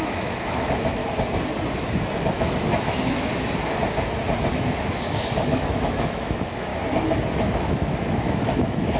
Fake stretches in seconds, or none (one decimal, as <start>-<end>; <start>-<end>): 0.0-1.0; 1.7-3.3; 4.5-6.7; 7.3-9.0